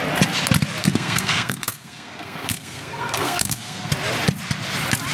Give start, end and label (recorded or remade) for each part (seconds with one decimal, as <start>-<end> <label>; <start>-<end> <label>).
0.0-0.8 recorded; 0.8-3.9 remade; 3.9-5.1 recorded